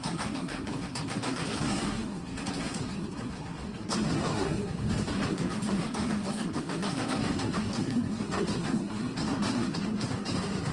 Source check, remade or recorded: remade